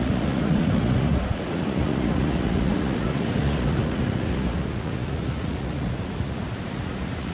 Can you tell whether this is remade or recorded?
remade